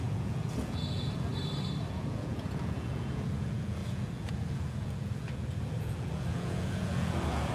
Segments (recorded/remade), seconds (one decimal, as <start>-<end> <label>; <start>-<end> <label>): 0.0-1.3 remade; 1.3-1.9 recorded; 1.9-7.5 remade